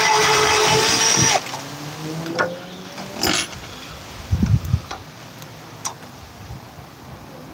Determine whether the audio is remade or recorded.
recorded